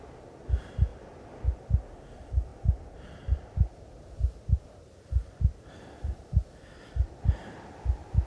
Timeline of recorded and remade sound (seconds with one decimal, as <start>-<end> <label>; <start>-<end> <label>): 0.0-2.5 recorded; 2.5-7.5 remade; 7.5-8.3 recorded

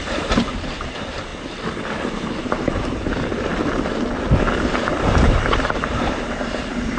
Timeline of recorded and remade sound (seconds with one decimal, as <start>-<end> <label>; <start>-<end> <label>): 0.0-1.3 remade; 1.3-2.4 recorded; 2.4-3.5 remade; 3.5-4.7 recorded; 4.7-7.0 remade